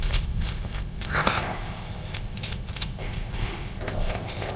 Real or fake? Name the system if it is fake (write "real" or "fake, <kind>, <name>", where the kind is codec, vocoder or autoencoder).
fake, codec, ZipCodec